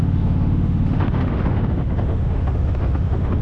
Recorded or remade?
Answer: remade